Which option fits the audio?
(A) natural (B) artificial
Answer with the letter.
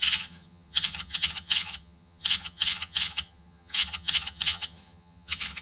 B